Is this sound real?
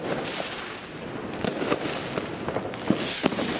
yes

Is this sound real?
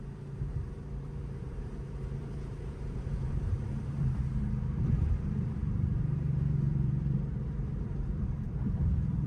no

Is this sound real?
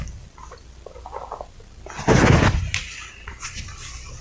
yes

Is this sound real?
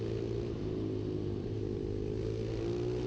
yes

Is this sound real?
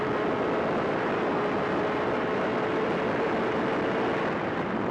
yes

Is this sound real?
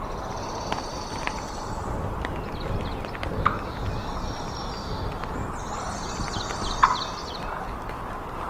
no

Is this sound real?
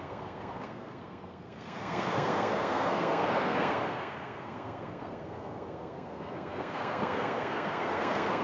no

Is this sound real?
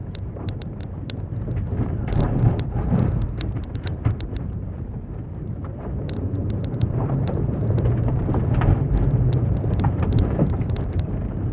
no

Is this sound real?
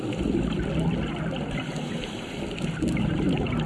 yes